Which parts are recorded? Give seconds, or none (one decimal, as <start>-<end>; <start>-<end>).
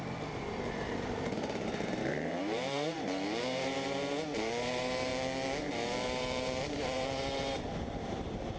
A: 5.1-5.7